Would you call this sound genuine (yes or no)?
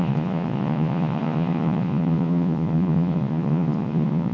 no